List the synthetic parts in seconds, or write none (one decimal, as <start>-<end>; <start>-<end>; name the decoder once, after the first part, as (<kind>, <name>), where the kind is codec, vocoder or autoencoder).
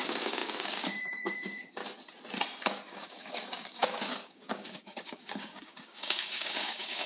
0.0-1.8 (codec, DAC); 2.9-7.1